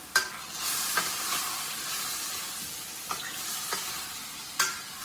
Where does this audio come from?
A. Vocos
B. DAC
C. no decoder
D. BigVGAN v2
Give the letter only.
C